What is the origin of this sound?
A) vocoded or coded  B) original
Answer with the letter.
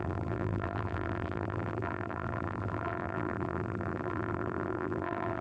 A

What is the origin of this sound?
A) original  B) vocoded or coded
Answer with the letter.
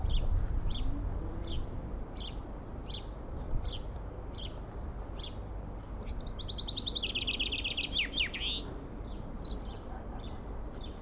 A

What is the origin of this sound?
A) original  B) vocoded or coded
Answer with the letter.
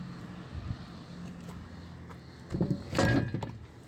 A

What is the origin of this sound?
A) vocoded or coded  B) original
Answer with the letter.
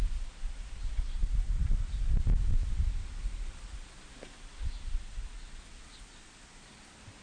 B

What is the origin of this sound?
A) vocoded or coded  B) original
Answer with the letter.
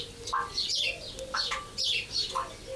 B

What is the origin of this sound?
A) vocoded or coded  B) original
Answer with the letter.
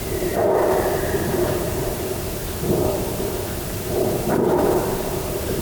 A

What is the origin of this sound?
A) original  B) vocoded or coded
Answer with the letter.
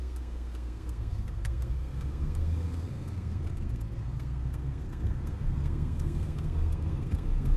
B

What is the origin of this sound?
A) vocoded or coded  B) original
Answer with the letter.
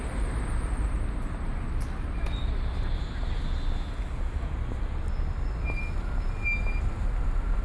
B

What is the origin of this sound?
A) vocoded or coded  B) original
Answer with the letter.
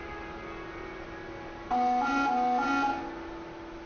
B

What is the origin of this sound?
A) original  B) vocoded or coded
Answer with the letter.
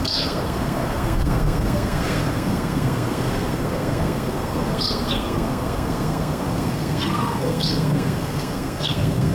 B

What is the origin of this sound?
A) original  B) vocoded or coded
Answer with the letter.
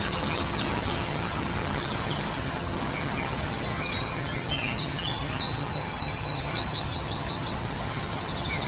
B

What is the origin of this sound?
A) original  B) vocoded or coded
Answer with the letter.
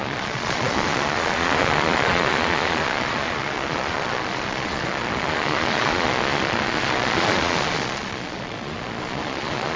B